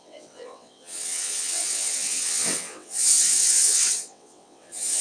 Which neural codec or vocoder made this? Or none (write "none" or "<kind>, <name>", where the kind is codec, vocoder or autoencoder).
vocoder, WaveNeXt